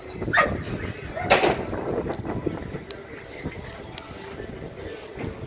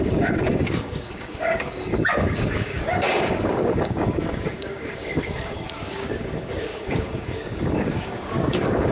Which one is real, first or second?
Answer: first